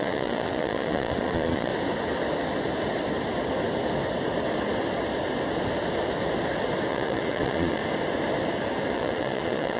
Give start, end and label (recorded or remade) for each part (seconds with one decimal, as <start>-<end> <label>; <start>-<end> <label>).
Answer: 0.0-1.7 remade; 1.7-6.9 recorded; 6.9-7.8 remade; 7.8-8.9 recorded; 8.9-9.8 remade